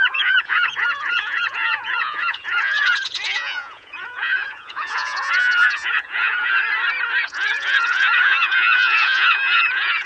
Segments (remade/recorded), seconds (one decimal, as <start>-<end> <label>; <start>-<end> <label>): 0.0-6.6 remade; 6.6-7.2 recorded; 7.2-10.1 remade